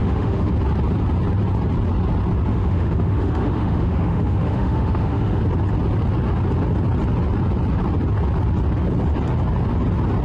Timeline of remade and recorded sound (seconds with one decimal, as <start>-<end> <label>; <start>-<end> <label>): 0.0-0.5 remade; 0.5-2.5 recorded; 2.5-5.4 remade; 5.4-10.2 recorded